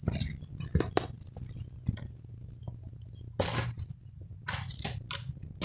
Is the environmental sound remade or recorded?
recorded